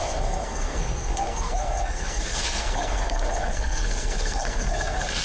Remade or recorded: remade